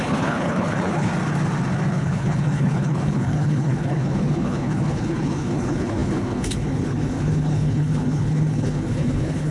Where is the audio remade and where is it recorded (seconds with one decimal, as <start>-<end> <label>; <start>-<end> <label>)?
0.0-1.1 remade; 1.1-1.9 recorded; 1.9-9.5 remade